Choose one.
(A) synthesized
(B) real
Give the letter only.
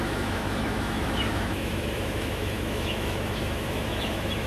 A